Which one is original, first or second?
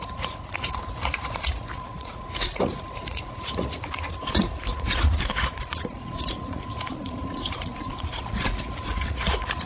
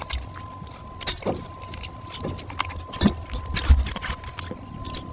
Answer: second